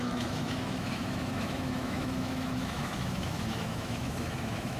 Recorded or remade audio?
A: remade